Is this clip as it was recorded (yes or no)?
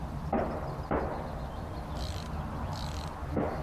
yes